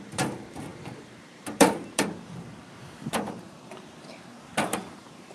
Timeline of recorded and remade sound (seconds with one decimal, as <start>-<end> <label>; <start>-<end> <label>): 0.0-5.3 remade